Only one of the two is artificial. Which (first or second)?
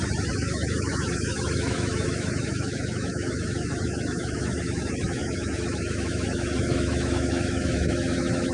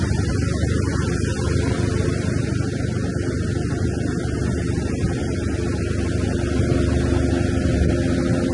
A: first